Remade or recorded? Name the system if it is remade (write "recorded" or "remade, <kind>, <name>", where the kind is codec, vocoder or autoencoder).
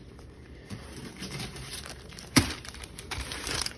remade, vocoder, BigVGAN v2